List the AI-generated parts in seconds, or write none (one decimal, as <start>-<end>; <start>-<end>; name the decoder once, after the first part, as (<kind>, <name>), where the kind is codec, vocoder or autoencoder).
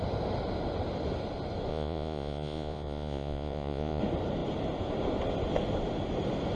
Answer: 1.7-4.0 (vocoder, Vocos)